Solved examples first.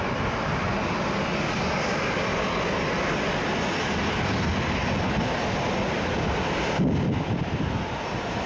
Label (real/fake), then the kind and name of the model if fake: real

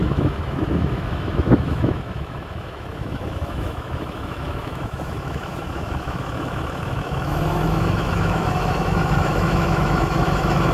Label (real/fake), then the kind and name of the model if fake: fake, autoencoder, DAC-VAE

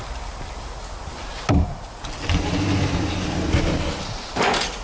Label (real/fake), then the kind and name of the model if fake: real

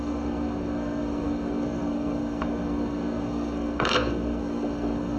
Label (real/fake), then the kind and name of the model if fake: fake, codec, SNAC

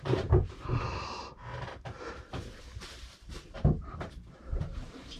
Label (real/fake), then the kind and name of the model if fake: fake, vocoder, BigVGAN v2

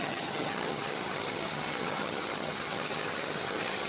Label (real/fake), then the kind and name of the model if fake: fake, vocoder, HiFi-GAN